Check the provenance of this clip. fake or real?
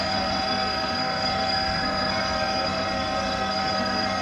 fake